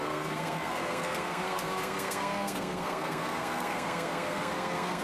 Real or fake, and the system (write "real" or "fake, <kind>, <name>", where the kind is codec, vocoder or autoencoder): fake, codec, SNAC